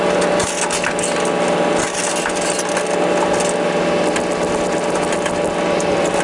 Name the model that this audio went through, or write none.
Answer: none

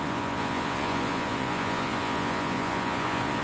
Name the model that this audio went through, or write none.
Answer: vocoder, Vocos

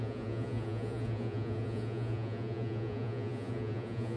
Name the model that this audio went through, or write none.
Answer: vocoder, Vocos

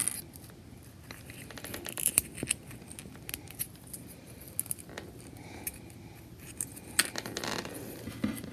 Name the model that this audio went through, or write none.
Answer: none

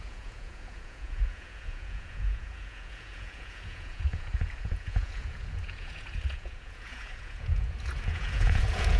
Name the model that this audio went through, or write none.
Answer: vocoder, Vocos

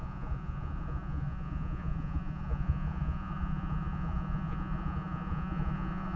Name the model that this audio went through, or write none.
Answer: vocoder, Vocos